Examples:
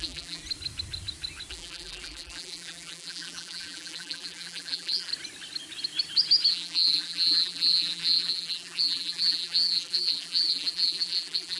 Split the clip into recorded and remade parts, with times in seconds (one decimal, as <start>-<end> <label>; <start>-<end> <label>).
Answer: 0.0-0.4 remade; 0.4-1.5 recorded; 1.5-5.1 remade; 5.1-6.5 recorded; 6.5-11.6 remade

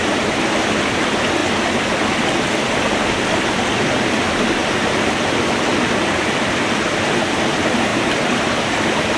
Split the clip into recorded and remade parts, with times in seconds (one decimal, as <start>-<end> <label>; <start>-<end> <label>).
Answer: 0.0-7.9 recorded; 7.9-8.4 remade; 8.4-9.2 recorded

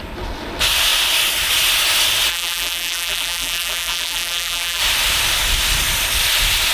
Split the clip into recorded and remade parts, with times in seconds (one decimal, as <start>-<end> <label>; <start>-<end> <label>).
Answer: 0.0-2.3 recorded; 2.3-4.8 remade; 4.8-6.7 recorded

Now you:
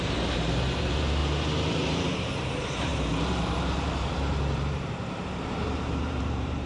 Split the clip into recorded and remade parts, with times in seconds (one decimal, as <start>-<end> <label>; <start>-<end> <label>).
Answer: 0.0-1.2 remade; 1.2-1.7 recorded; 1.7-6.7 remade

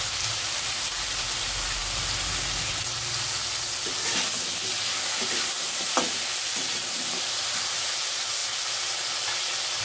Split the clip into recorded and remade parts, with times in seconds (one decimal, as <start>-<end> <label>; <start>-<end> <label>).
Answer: 0.0-1.8 remade; 1.8-5.5 recorded; 5.5-8.4 remade; 8.4-9.8 recorded

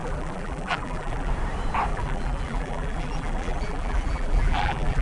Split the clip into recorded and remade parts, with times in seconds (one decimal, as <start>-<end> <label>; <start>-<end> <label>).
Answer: 0.0-1.3 remade; 1.3-1.9 recorded; 1.9-5.0 remade